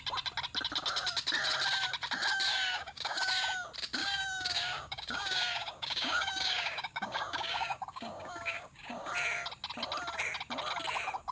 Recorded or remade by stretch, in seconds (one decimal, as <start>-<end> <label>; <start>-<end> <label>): 0.0-2.5 recorded; 2.5-3.3 remade; 3.3-4.0 recorded; 4.0-9.1 remade; 9.1-11.3 recorded